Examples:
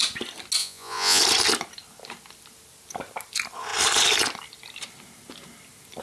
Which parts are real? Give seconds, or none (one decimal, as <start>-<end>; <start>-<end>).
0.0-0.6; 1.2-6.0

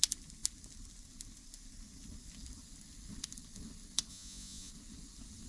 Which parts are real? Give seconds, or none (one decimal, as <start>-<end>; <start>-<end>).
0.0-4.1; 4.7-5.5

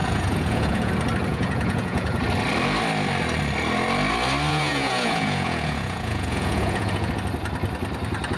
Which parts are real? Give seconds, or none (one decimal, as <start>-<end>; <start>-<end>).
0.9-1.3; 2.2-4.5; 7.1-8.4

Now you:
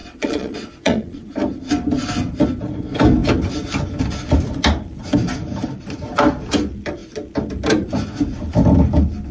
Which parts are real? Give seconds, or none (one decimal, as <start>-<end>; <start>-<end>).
1.3-9.3

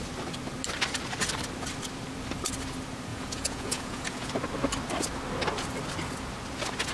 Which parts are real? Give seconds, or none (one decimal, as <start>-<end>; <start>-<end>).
0.0-3.1; 4.3-6.9

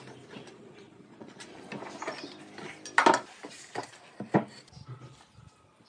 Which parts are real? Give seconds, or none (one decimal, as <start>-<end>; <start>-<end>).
0.0-0.4; 1.6-5.9

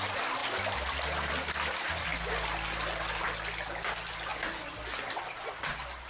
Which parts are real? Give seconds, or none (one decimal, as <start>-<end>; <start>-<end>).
0.0-6.1

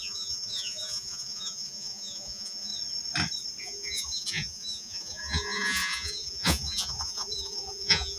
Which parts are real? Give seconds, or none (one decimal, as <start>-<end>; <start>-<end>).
2.7-3.6